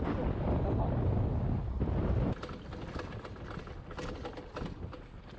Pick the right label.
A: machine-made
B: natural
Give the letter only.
B